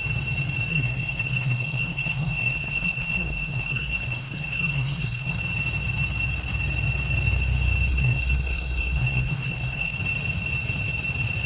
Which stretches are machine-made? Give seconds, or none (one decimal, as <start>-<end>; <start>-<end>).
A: 0.7-5.4; 7.9-10.0